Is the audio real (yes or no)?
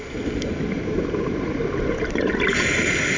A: yes